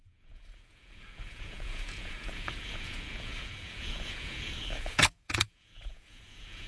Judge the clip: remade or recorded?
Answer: remade